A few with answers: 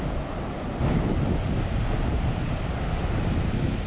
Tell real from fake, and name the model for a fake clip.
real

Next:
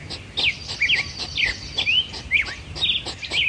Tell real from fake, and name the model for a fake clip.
real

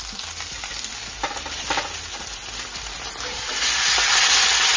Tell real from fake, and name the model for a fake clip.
real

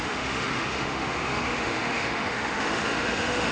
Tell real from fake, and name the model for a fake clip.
fake, autoencoder, DAC-VAE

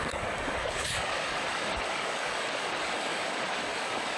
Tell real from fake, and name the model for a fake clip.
fake, codec, DAC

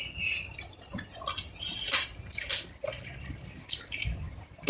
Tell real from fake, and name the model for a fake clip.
real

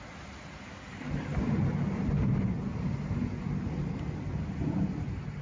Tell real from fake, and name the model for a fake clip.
real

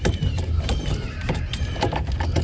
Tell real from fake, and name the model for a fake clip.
real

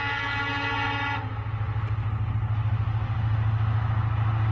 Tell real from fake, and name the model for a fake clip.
real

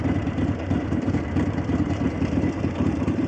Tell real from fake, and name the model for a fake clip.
fake, vocoder, BigVGAN v2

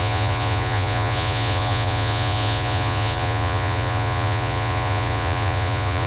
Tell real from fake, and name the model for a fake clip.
fake, vocoder, Vocos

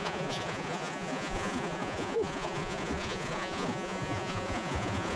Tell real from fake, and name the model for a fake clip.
fake, vocoder, Vocos